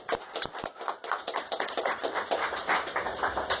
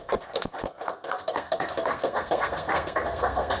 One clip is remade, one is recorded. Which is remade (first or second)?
second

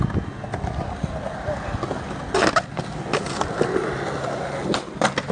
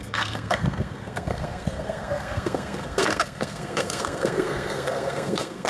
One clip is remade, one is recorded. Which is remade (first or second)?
second